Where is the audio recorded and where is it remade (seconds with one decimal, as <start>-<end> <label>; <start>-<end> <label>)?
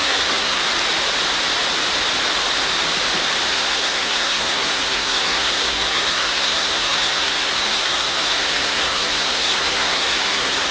0.0-0.6 remade; 0.6-3.5 recorded; 3.5-10.7 remade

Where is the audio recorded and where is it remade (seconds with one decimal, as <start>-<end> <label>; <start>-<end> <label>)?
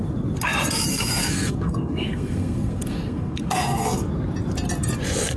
0.0-0.9 recorded; 0.9-4.1 remade; 4.1-5.4 recorded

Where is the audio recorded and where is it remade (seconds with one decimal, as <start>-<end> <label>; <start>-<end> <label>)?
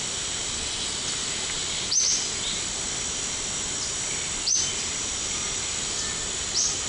0.0-6.9 recorded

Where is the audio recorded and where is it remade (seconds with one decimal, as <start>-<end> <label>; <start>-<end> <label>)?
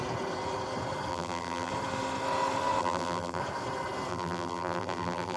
0.0-1.1 recorded; 1.1-1.7 remade; 1.7-2.8 recorded; 2.8-3.4 remade; 3.4-4.1 recorded; 4.1-5.4 remade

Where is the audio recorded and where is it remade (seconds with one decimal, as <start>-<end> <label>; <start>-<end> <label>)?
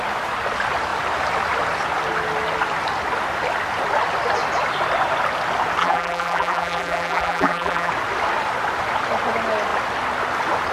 0.0-5.8 recorded; 5.8-7.9 remade; 7.9-10.7 recorded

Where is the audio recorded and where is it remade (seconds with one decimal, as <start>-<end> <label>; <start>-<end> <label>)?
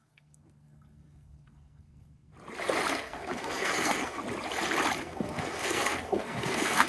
0.0-2.3 remade; 2.3-2.9 recorded; 2.9-4.2 remade; 4.2-5.0 recorded; 5.0-6.9 remade